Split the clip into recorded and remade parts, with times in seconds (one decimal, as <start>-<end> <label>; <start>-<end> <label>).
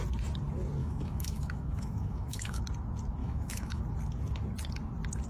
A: 0.0-0.8 recorded; 0.8-2.6 remade; 2.6-3.2 recorded; 3.2-3.8 remade; 3.8-5.3 recorded